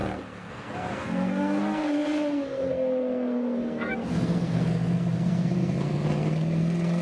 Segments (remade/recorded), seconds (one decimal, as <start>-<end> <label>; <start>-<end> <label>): 0.0-7.0 remade